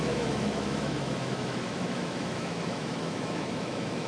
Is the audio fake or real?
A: fake